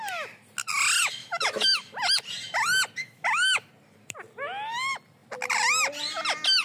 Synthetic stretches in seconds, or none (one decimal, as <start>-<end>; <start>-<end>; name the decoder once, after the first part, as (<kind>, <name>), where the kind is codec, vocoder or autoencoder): 1.2-1.9 (autoencoder, DAC-VAE); 3.0-3.7